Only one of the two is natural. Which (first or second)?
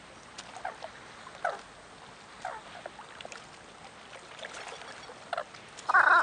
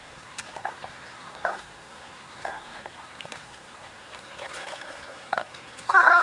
first